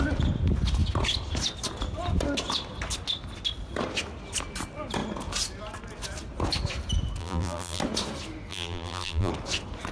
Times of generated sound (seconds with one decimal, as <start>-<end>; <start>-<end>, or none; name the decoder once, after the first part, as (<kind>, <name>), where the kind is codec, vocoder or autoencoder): 7.2-7.8 (vocoder, BigVGAN v2); 8.5-9.3